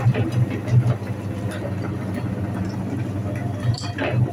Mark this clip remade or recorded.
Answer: remade